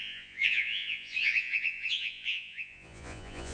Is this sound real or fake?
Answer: fake